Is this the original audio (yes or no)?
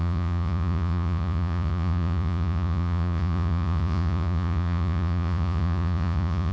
no